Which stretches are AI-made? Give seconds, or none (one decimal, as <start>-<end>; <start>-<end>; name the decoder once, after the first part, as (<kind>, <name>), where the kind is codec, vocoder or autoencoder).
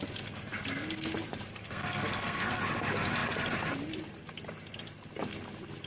1.6-2.6 (codec, SNAC)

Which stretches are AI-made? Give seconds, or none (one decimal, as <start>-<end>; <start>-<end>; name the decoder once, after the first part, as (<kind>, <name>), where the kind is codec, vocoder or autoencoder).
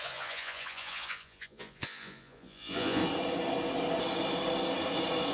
0.0-3.0 (vocoder, Vocos)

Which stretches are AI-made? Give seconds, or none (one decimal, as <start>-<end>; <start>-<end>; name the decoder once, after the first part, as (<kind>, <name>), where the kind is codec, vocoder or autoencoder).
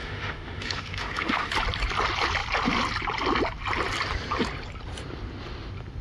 0.0-1.5 (autoencoder, DAC-VAE)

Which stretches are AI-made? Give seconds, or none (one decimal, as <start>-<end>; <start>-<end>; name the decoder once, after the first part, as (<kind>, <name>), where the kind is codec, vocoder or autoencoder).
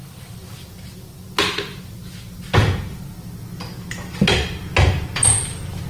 none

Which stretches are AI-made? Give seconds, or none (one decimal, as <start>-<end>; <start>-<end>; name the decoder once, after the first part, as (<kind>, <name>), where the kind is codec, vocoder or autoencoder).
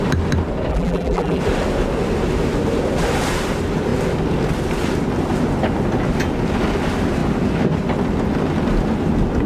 0.7-1.4 (vocoder, BigVGAN v2)